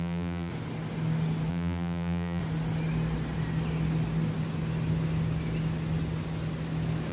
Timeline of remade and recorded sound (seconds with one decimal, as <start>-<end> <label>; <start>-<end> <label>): 0.0-0.5 remade; 0.5-1.5 recorded; 1.5-2.4 remade; 2.4-7.1 recorded